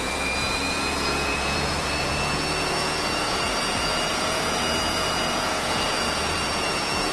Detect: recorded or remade remade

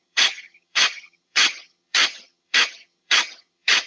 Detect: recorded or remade remade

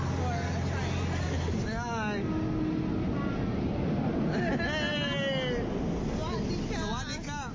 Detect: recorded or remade recorded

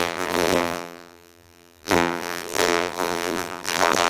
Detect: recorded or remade remade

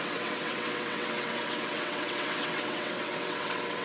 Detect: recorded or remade remade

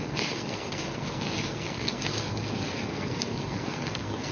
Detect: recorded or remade remade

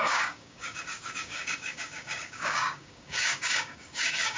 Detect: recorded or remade remade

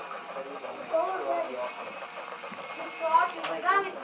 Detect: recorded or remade recorded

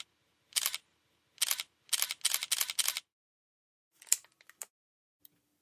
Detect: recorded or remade recorded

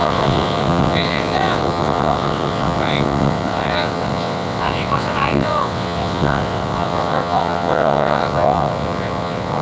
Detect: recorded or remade remade